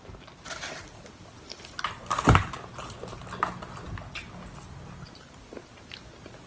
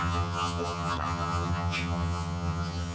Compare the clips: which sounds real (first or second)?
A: first